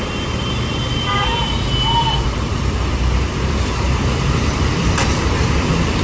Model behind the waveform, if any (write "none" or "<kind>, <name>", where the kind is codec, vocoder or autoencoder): vocoder, BigVGAN v2